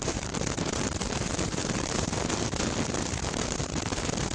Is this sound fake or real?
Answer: fake